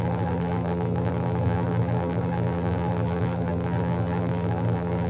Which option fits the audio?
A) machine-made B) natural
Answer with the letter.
A